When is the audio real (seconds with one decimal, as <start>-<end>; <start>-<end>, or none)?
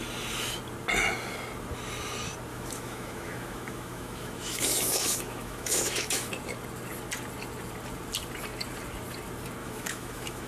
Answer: 0.0-2.5; 6.3-9.6